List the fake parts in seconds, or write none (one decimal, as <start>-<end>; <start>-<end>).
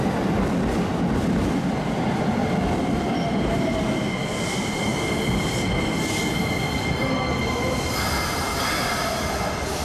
2.4-3.6